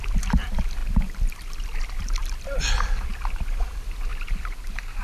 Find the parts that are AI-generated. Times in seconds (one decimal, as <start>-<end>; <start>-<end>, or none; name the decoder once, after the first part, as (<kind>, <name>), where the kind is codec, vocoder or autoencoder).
4.1-5.0 (vocoder, BigVGAN v2)